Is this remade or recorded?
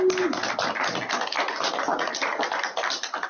recorded